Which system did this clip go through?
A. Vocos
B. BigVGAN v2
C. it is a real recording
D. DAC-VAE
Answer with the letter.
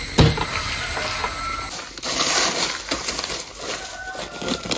C